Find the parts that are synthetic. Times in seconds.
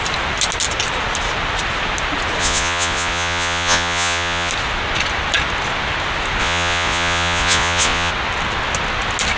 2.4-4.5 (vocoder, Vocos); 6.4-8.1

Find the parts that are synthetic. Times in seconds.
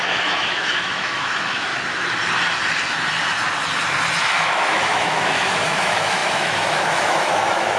0.0-1.7 (autoencoder, DAC-VAE); 4.2-7.8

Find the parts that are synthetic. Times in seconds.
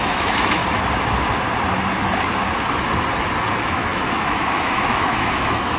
0.0-0.6 (autoencoder, DAC-VAE); 3.5-5.8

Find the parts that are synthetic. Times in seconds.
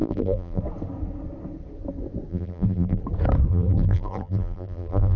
0.0-0.6 (vocoder, BigVGAN v2); 2.3-3.0; 3.5-5.2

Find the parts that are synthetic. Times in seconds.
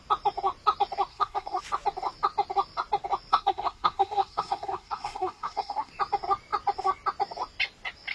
1.1-1.6 (codec, SNAC); 3.3-5.9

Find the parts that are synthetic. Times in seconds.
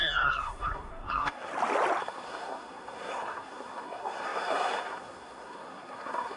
0.0-1.5 (codec, SNAC); 2.0-6.4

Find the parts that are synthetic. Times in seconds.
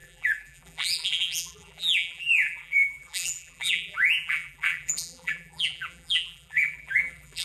0.0-7.4 (vocoder, BigVGAN v2)